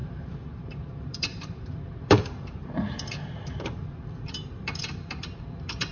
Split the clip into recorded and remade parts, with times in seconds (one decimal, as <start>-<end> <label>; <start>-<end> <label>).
0.0-5.9 remade